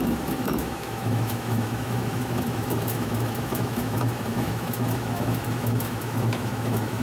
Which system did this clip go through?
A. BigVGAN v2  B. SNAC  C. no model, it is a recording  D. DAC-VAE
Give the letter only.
D